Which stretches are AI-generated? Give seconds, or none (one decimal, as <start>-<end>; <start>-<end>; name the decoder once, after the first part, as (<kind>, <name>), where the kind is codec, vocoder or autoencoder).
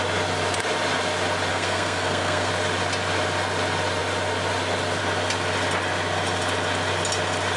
1.5-2.5 (codec, SNAC)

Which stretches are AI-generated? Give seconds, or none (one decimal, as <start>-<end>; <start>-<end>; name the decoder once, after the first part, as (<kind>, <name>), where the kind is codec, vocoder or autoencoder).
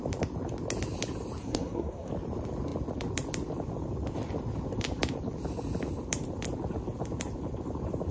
1.4-2.1 (codec, SNAC)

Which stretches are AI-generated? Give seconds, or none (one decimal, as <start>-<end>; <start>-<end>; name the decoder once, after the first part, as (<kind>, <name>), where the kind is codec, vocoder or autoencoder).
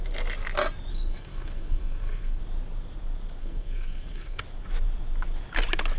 0.9-2.4 (codec, SNAC); 3.4-4.4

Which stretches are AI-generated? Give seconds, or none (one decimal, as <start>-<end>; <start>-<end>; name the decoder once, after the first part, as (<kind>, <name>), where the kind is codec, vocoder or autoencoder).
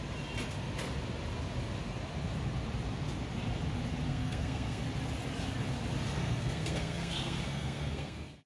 4.1-4.8 (codec, SNAC); 6.2-8.5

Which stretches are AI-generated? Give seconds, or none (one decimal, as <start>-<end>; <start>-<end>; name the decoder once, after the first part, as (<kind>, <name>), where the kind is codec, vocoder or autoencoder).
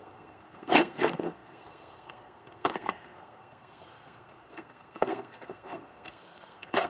0.0-6.9 (codec, SNAC)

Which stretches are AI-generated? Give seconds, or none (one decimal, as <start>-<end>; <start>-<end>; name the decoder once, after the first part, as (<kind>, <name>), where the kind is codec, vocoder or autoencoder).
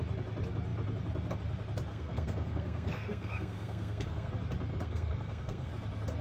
1.9-4.3 (codec, SNAC); 4.7-5.7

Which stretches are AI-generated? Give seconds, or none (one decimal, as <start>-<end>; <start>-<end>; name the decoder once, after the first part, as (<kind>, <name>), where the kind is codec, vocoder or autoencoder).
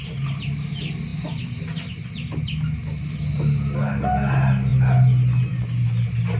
none